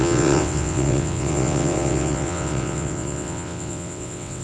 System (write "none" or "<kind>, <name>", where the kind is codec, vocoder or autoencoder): vocoder, WaveNeXt